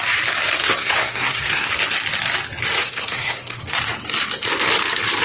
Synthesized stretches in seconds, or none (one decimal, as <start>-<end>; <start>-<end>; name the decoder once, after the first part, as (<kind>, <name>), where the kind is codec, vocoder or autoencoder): 0.6-1.7 (codec, SNAC); 2.8-3.6